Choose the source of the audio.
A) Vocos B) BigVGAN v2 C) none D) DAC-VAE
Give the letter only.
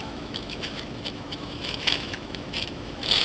D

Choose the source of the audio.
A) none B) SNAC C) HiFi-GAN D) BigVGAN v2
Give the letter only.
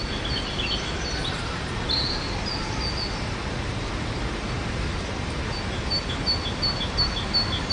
A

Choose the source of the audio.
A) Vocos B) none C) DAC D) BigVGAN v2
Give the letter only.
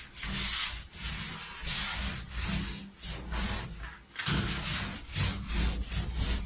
B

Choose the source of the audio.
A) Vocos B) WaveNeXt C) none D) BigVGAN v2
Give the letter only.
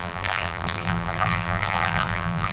D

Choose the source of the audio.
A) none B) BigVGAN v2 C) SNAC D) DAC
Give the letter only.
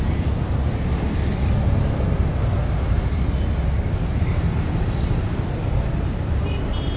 A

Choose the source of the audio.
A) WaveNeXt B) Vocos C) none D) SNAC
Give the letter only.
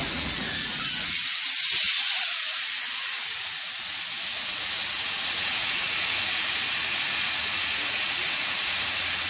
B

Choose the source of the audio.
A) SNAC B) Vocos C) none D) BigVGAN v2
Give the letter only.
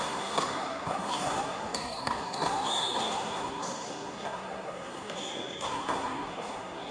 A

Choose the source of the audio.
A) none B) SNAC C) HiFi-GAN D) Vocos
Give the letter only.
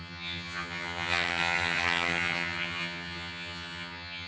C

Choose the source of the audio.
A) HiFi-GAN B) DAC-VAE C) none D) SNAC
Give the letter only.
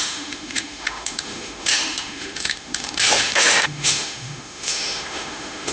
B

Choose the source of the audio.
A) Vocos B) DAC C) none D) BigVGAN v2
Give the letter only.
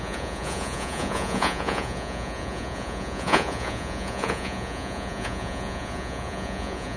A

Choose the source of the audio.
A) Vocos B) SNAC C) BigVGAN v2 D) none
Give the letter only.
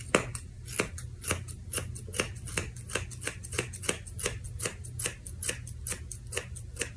D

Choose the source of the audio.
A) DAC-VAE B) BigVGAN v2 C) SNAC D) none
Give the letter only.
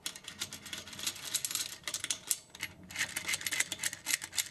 D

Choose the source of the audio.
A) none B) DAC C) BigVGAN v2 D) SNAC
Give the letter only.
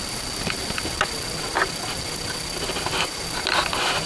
A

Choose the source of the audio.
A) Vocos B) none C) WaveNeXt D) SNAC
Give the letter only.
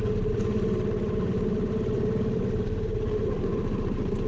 B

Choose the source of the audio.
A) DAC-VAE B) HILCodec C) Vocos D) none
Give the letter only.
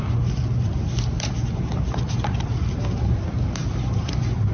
D